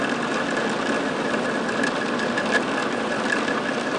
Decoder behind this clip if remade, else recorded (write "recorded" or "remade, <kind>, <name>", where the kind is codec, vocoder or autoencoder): recorded